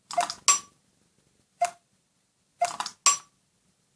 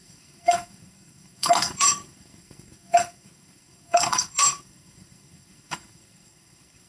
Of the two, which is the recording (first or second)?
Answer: first